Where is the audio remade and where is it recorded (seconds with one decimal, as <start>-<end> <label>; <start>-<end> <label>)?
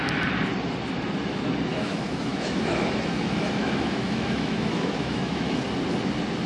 0.0-1.7 recorded; 1.7-5.6 remade; 5.6-6.5 recorded